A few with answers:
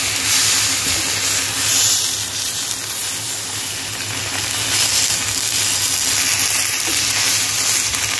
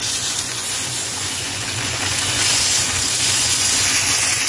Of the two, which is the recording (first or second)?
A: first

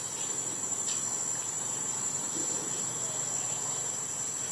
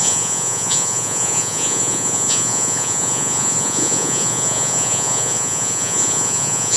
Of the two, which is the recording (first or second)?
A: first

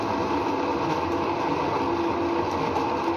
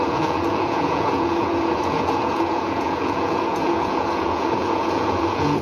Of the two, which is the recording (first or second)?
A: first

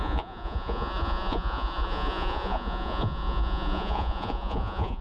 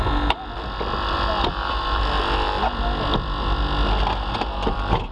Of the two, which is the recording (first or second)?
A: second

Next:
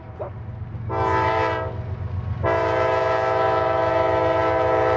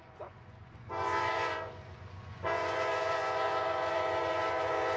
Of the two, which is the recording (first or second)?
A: first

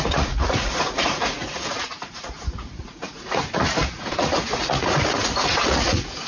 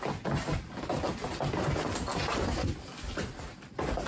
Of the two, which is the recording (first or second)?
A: second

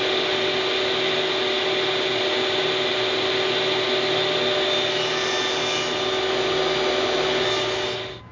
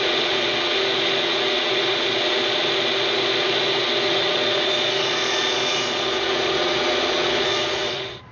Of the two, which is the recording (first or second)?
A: first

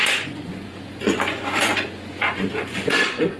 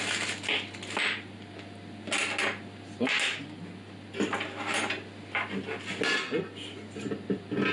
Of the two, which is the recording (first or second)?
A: second